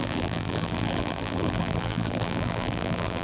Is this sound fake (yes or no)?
yes